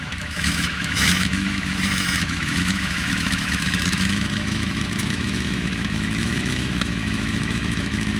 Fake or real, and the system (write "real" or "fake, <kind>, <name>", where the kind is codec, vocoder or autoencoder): fake, autoencoder, DAC-VAE